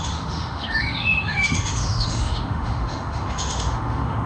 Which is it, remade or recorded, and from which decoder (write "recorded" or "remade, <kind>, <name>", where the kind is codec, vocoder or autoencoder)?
remade, autoencoder, DAC-VAE